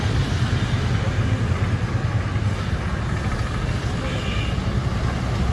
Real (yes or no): yes